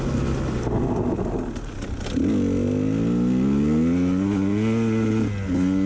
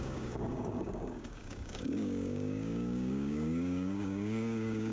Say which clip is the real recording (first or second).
first